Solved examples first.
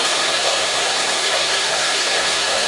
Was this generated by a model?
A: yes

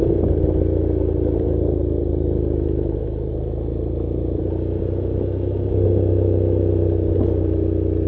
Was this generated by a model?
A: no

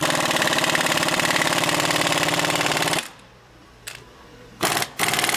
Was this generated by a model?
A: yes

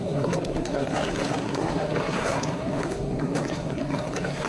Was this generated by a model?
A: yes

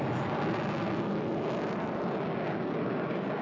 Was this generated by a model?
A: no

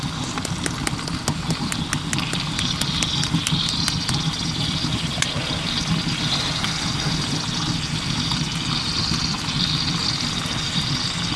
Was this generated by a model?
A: no